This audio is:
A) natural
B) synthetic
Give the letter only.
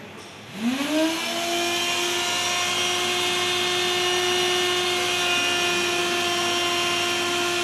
A